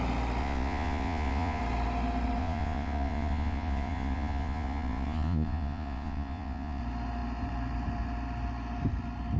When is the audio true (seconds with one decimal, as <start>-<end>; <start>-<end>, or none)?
0.0-0.4; 1.6-2.4; 6.8-9.4